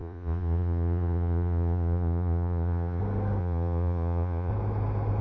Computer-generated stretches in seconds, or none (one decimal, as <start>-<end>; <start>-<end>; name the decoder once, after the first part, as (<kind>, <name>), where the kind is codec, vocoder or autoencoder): 0.0-3.0 (vocoder, Vocos); 3.4-4.5